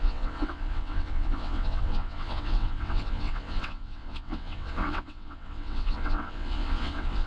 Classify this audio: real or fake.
fake